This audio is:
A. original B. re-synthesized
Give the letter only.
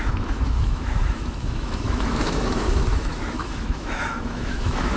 B